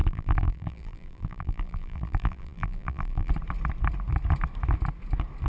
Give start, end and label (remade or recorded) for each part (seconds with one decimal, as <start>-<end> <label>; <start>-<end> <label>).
0.0-3.3 remade; 3.3-5.5 recorded